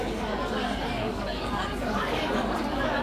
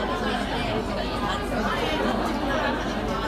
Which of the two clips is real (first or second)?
second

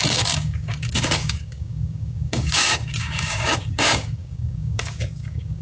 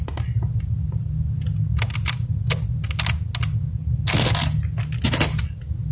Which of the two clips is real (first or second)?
second